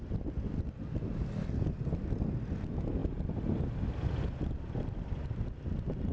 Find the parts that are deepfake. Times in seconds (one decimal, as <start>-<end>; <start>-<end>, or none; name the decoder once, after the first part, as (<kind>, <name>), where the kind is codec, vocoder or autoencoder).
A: none